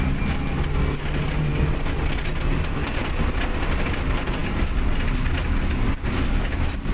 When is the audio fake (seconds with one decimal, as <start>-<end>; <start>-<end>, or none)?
1.5-2.4; 2.8-3.7